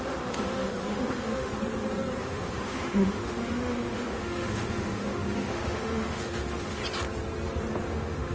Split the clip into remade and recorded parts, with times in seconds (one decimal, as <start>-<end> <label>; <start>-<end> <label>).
0.0-1.5 remade; 1.5-2.2 recorded; 2.2-6.8 remade; 6.8-7.9 recorded; 7.9-8.3 remade